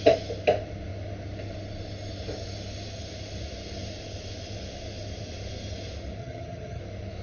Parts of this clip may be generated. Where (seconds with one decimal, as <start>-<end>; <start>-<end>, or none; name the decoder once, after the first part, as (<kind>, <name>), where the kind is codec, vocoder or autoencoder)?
6.2-6.8 (vocoder, HiFi-GAN)